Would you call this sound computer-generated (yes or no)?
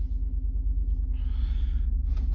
no